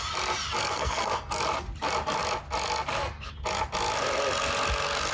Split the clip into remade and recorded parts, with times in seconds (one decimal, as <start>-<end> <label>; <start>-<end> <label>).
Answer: 0.0-0.6 recorded; 0.6-1.4 remade; 1.4-5.1 recorded